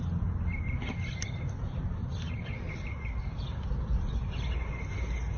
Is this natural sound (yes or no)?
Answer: yes